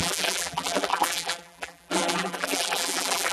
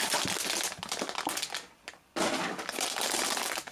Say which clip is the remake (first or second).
first